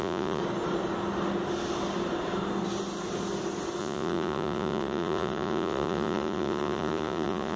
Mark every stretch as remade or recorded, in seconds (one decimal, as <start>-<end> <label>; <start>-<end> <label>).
0.0-0.4 remade; 0.4-3.8 recorded; 3.8-7.6 remade